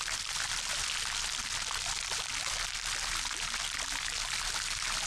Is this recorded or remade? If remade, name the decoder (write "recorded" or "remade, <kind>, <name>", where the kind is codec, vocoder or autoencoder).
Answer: recorded